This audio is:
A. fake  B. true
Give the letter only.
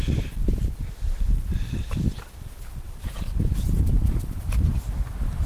A